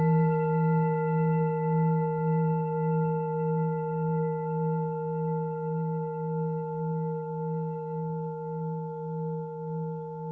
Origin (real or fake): fake